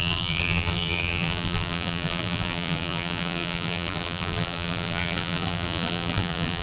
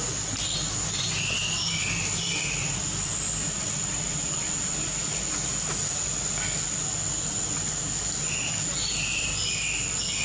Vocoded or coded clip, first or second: first